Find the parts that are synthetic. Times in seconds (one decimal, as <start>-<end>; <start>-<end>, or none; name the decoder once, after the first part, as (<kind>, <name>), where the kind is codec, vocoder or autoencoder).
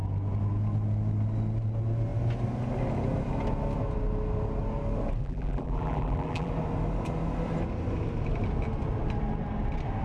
5.2-6.5 (vocoder, BigVGAN v2)